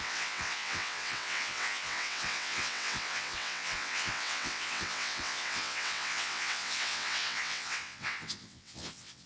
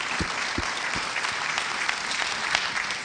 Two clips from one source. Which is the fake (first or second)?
first